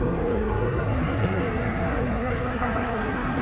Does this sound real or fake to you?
fake